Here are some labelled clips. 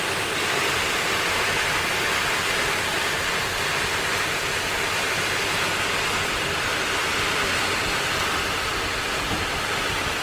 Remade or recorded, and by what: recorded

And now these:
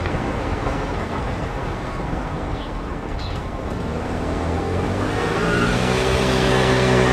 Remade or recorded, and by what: remade, codec, SNAC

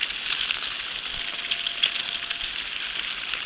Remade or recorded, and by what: recorded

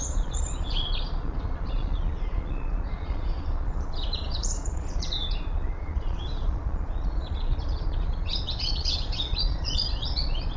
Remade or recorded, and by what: remade, vocoder, Vocos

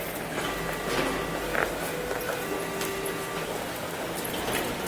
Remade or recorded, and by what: recorded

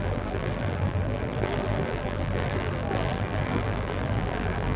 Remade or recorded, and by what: remade, vocoder, BigVGAN v2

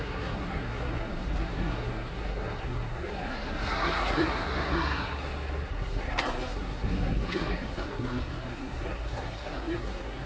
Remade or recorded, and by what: remade, codec, SNAC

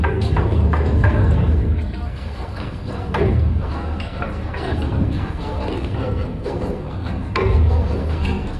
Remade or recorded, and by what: remade, codec, SNAC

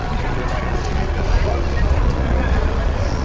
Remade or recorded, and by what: remade, vocoder, Vocos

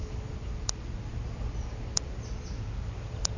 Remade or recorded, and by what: recorded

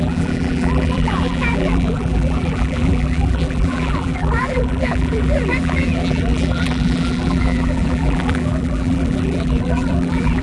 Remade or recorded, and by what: remade, vocoder, BigVGAN v2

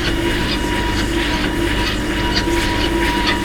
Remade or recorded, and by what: recorded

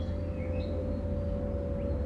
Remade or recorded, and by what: recorded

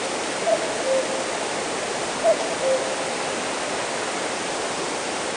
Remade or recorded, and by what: recorded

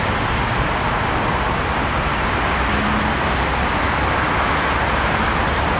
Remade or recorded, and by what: recorded